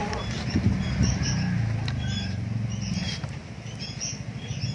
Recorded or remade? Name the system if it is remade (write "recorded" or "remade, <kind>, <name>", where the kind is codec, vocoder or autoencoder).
recorded